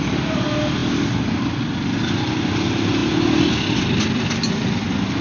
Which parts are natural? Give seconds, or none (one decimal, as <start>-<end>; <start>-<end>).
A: 0.0-5.2